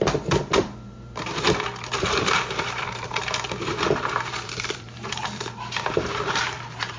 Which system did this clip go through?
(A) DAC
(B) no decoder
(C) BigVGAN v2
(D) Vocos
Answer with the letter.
C